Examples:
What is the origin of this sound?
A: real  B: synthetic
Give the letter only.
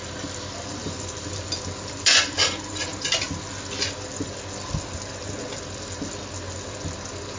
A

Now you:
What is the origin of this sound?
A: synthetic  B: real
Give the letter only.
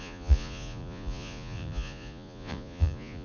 A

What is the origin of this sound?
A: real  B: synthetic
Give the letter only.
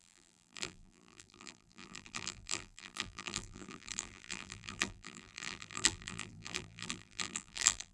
B